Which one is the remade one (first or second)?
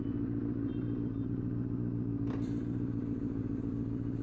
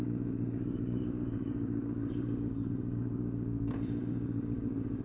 second